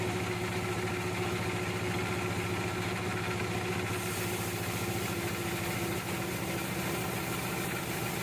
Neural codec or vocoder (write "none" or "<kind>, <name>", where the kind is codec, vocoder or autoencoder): none